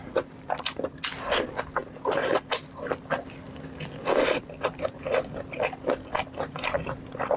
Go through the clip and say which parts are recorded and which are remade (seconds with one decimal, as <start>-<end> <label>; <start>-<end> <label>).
0.0-7.4 recorded